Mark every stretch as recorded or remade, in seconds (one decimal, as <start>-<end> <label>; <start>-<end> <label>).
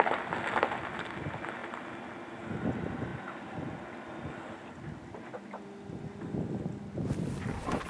0.0-7.9 recorded